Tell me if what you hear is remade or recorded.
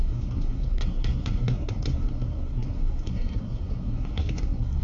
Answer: remade